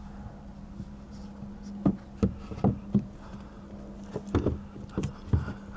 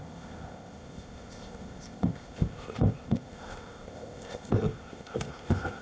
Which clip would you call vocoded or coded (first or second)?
second